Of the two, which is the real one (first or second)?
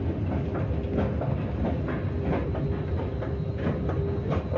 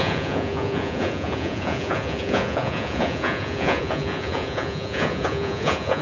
first